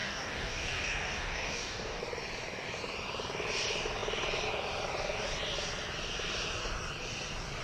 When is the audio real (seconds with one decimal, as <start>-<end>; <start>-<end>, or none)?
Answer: 2.0-7.6